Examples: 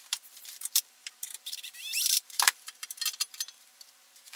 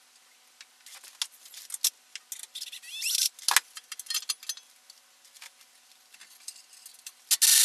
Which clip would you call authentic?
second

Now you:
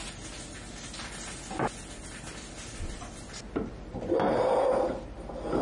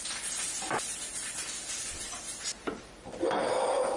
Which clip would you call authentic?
first